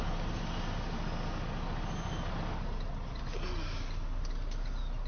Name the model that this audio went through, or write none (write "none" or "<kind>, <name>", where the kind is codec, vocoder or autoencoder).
none